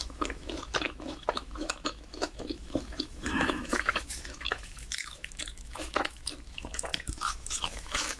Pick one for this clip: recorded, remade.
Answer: remade